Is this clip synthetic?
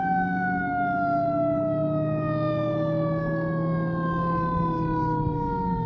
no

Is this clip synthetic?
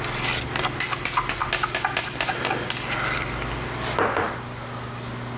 no